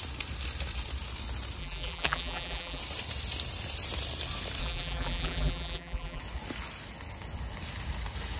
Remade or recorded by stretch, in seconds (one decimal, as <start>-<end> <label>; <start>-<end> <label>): 0.0-1.6 recorded; 1.6-2.8 remade; 2.8-4.6 recorded; 4.6-6.2 remade; 6.2-8.4 recorded